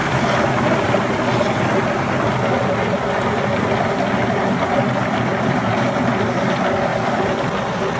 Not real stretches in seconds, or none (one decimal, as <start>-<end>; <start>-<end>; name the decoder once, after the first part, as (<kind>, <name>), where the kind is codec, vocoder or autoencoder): 0.0-1.2 (vocoder, BigVGAN v2)